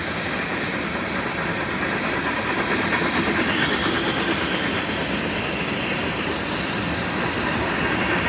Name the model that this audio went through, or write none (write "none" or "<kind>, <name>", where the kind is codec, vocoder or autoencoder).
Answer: none